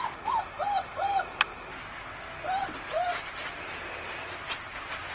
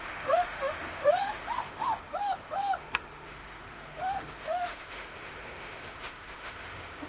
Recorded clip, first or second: first